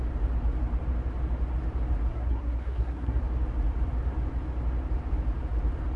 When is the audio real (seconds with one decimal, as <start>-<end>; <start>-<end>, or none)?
0.0-2.1; 3.2-6.0